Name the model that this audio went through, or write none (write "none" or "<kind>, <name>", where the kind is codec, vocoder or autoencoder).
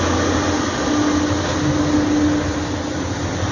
none